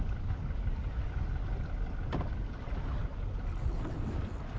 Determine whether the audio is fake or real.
real